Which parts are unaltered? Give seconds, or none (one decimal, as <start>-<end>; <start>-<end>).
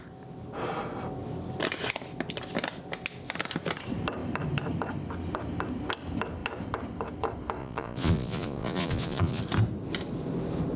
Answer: 0.0-7.6; 9.4-10.8